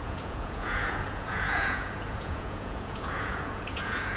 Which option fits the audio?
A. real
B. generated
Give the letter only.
B